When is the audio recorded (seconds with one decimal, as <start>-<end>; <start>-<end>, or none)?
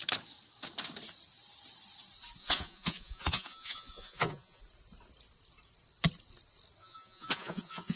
0.0-2.4; 4.6-6.8